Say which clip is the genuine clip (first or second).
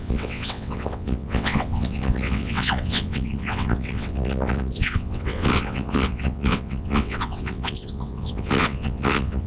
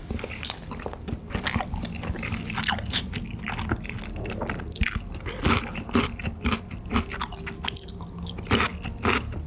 second